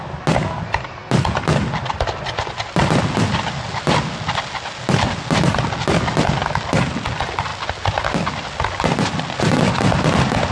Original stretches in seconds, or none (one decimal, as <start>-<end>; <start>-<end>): 0.0-10.5

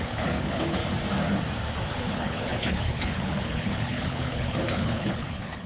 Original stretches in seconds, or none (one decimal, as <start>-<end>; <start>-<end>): 0.8-1.9

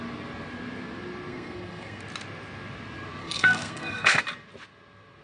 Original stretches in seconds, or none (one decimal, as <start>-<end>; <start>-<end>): 0.0-1.3; 2.0-3.2; 4.2-5.2

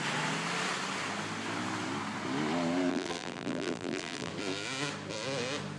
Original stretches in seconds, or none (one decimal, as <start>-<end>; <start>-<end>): 0.0-2.9; 4.3-5.8

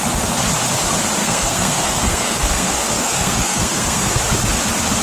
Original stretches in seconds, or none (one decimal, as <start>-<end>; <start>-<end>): 0.0-1.2; 4.2-5.0

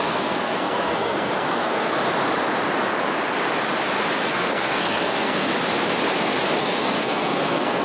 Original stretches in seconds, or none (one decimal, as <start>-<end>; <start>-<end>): 2.0-4.3; 5.5-6.6